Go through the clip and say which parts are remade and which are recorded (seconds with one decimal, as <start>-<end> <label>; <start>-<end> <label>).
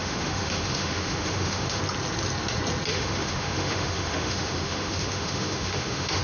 0.0-1.8 remade; 1.8-2.9 recorded; 2.9-6.2 remade